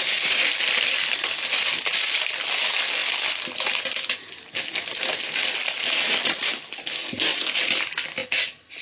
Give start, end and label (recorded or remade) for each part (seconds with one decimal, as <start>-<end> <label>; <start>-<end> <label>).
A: 0.0-8.8 recorded